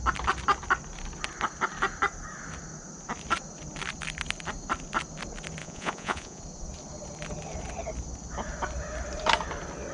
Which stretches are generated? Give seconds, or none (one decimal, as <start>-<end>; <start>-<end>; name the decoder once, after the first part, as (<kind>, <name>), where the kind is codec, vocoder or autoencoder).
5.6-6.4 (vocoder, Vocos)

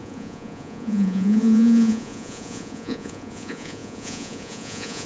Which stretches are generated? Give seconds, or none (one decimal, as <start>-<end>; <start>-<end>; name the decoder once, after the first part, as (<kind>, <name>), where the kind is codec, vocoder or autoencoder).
0.0-5.1 (vocoder, Vocos)

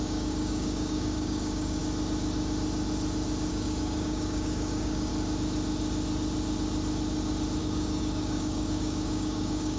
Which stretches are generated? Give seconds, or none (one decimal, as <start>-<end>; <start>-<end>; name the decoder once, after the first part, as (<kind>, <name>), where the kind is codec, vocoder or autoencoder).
0.0-1.8 (codec, DAC); 3.5-5.1; 7.6-9.8

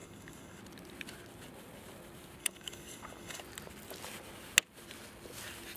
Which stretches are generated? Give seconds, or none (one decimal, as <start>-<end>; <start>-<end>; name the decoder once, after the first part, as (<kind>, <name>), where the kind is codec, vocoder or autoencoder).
0.0-0.6 (codec, DAC); 2.4-3.4

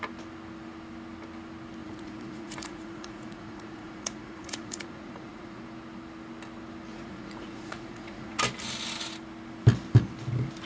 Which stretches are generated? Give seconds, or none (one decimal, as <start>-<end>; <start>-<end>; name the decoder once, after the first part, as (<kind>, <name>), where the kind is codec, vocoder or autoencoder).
1.8-5.6 (vocoder, Vocos); 6.9-8.4

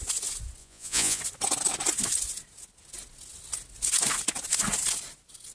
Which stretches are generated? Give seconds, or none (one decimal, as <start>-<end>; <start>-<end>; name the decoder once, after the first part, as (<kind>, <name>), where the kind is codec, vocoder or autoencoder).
0.6-1.2 (vocoder, Vocos)